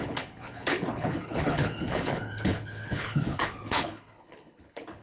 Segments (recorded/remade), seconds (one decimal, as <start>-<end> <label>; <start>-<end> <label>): 0.0-5.0 remade